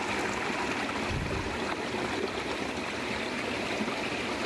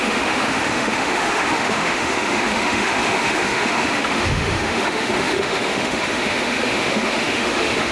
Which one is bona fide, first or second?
first